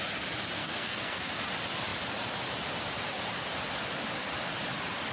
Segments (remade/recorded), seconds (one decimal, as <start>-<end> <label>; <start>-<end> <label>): 0.0-0.6 recorded; 0.6-1.3 remade; 1.3-5.1 recorded